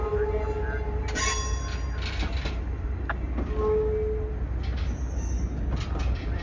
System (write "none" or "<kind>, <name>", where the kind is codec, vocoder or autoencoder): none